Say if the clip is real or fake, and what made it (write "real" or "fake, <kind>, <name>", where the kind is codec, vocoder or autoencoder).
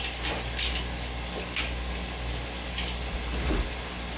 real